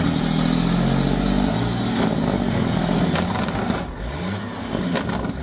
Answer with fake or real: real